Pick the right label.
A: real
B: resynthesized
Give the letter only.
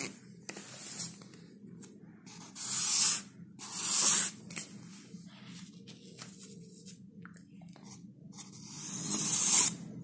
A